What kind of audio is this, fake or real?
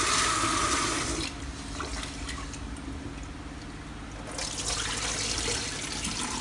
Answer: real